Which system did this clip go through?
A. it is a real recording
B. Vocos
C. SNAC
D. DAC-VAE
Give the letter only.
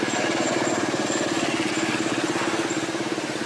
A